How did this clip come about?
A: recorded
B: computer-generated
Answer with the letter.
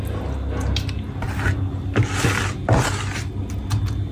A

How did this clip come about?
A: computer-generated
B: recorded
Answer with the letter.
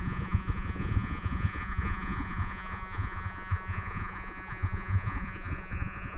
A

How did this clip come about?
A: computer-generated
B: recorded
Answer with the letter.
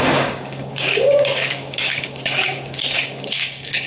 A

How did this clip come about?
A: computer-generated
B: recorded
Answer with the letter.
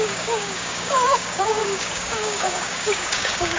A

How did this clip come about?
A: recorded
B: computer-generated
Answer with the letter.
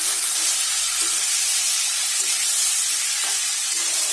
A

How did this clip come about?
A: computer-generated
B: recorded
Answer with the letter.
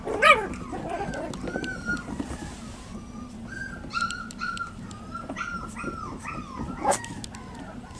B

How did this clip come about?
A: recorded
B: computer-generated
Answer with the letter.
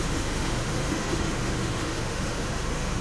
B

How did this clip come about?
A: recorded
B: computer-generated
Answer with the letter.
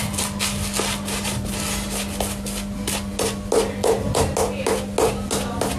A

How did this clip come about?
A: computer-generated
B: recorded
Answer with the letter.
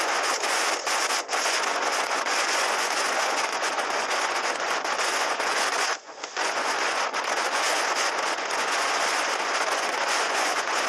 A